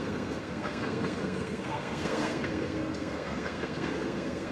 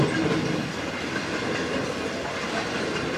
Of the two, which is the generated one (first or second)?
first